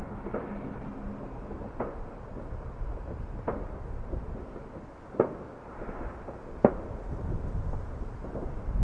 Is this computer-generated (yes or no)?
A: no